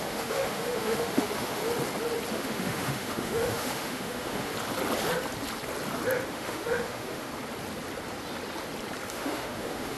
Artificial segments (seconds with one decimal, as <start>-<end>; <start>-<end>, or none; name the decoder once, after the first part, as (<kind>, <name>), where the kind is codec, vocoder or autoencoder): 0.0-1.6 (autoencoder, DAC-VAE); 2.3-4.5; 6.3-7.3; 9.1-10.0